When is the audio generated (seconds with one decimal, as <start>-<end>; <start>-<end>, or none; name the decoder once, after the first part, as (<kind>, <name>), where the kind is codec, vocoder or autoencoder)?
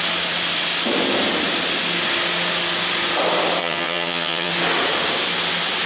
3.6-4.5 (vocoder, HiFi-GAN)